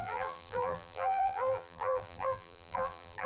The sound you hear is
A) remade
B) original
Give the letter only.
A